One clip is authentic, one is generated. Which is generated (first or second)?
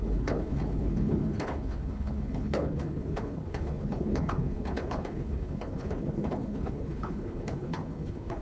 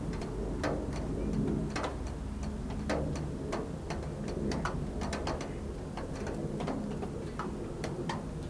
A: first